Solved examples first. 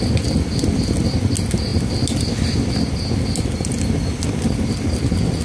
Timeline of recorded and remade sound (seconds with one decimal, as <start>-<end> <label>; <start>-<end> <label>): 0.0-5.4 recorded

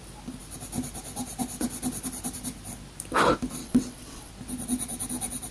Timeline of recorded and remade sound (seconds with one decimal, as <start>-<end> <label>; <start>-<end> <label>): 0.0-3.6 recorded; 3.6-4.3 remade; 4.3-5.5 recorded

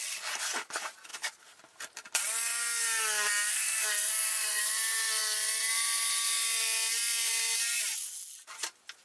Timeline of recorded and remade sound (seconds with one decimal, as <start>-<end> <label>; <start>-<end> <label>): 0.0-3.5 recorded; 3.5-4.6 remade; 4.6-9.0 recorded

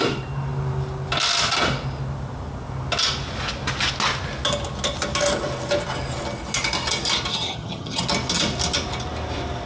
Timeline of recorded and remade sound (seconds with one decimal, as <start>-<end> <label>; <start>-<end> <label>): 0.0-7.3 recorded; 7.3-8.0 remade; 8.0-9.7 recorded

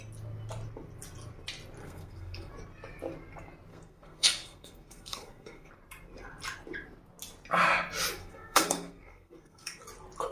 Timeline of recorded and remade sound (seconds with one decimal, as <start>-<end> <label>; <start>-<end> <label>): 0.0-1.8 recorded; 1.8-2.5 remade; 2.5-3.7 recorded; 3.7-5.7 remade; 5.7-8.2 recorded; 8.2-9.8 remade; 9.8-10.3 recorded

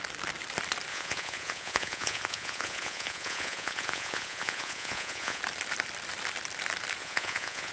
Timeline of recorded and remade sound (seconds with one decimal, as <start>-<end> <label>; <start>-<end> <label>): 0.0-0.9 recorded; 0.9-5.4 remade; 5.4-7.0 recorded; 7.0-7.7 remade

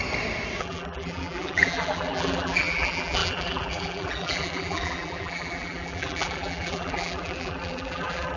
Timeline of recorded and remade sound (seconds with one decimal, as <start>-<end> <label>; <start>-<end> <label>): 0.0-0.6 recorded; 0.6-8.4 remade

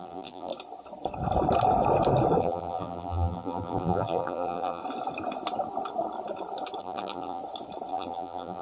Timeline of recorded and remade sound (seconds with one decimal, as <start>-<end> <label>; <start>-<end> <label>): 0.0-0.5 remade; 0.5-2.4 recorded; 2.4-4.8 remade; 4.8-6.8 recorded; 6.8-7.4 remade; 7.4-7.9 recorded; 7.9-8.6 remade